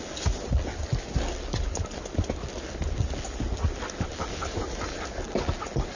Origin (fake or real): real